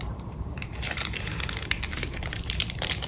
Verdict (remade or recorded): remade